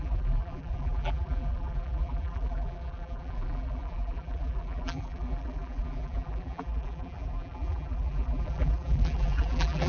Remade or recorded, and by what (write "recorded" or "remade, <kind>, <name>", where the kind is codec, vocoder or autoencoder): remade, vocoder, BigVGAN v2